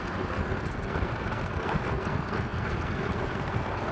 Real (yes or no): no